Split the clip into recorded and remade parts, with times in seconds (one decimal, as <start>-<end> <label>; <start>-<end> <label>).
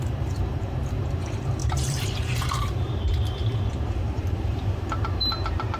0.0-5.8 remade